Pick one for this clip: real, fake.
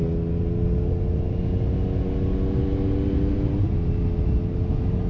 real